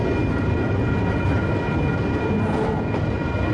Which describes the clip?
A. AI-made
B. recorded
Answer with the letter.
B